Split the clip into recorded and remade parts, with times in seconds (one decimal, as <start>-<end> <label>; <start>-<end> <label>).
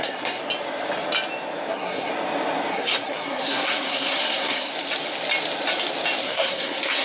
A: 0.0-0.4 remade; 0.4-1.7 recorded; 1.7-2.1 remade; 2.1-2.7 recorded; 2.7-4.7 remade; 4.7-6.2 recorded; 6.2-7.0 remade